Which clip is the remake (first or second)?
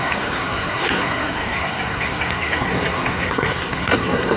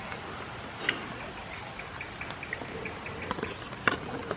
first